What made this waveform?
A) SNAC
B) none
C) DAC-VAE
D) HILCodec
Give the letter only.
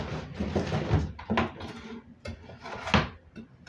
B